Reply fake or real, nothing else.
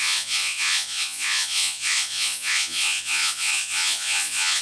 fake